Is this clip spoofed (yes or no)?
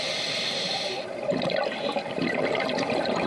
no